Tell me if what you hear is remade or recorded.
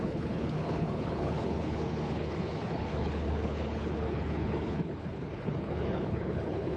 remade